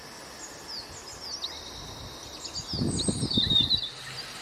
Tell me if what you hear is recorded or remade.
recorded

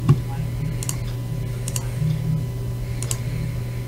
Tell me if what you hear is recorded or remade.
recorded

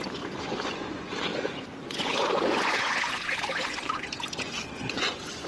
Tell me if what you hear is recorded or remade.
remade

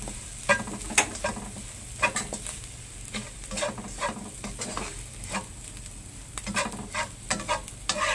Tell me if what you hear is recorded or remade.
recorded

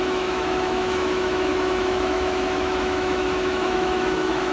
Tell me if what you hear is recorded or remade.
remade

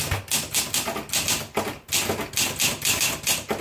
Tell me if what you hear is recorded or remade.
recorded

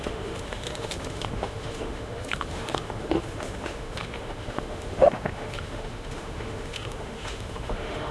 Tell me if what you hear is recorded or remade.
remade